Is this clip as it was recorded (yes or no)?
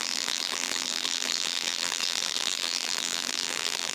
no